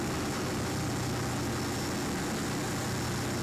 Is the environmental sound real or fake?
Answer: real